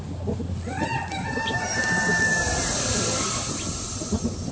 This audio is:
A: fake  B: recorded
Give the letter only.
B